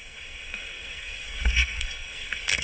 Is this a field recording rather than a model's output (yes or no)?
no